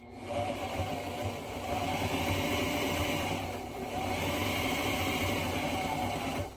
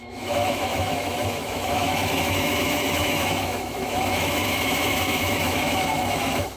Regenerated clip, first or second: second